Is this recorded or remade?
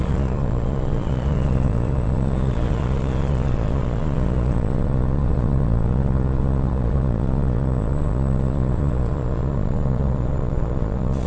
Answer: remade